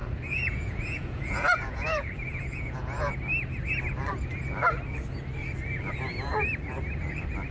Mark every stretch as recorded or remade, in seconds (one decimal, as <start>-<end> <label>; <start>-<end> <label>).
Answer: 0.0-3.1 remade; 3.1-7.5 recorded